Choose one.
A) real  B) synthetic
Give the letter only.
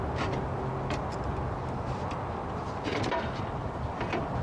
A